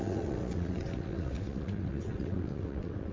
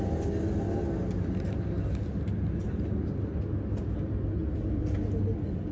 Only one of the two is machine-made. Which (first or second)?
first